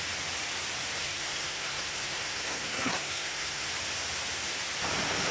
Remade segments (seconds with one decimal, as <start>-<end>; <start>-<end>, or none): 1.0-3.7